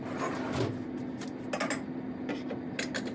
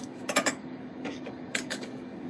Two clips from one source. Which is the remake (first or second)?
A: second